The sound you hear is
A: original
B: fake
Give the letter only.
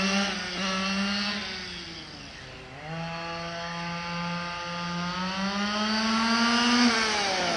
A